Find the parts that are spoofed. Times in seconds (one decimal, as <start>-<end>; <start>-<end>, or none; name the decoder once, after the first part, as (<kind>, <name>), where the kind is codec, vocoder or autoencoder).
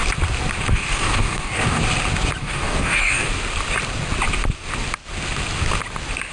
0.7-1.8 (codec, DAC); 2.4-3.3